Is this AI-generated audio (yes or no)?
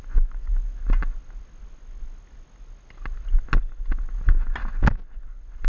no